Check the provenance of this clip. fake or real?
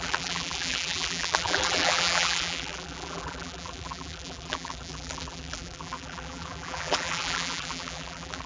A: fake